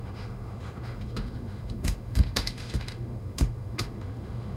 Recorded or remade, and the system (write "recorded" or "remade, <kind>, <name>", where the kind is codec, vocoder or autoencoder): remade, autoencoder, DAC-VAE